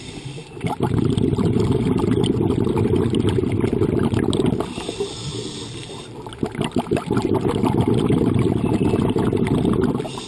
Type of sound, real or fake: real